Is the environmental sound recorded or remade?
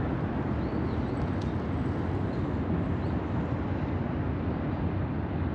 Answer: recorded